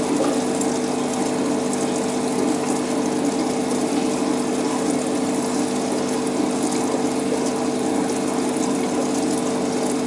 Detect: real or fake real